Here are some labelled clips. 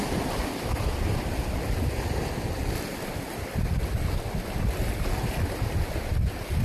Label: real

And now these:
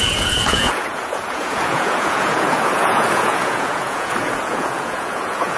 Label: fake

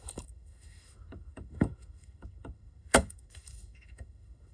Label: fake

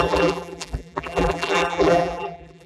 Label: fake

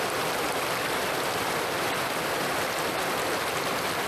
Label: real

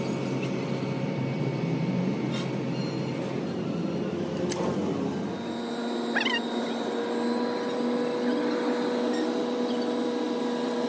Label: real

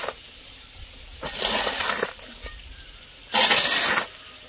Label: real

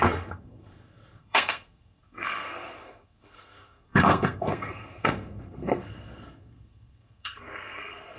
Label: fake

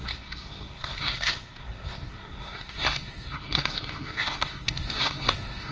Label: fake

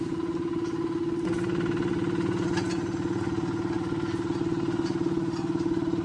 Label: real